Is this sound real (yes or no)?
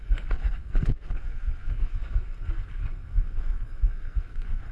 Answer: no